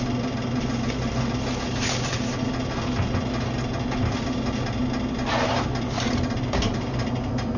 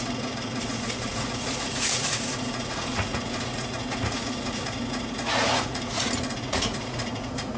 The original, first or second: first